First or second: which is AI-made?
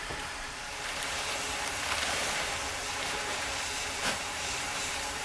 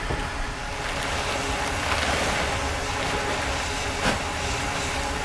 first